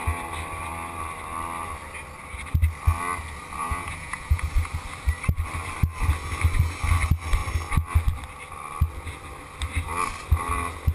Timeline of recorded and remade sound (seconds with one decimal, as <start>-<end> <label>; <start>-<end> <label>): 0.0-3.6 recorded; 3.6-4.4 remade; 4.4-10.9 recorded